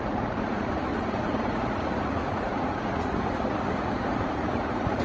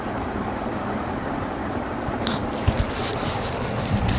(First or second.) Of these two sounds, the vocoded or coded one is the first